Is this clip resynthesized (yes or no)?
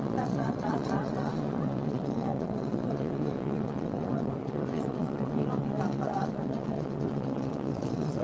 yes